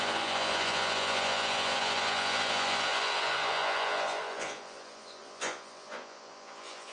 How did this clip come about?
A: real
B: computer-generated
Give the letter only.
B